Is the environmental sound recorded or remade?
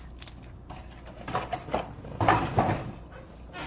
recorded